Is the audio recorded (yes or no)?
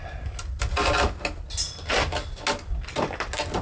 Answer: yes